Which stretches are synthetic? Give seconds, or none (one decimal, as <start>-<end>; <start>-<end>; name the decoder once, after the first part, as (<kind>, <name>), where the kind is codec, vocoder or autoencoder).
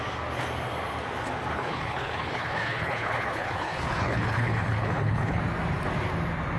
1.5-5.4 (codec, HILCodec)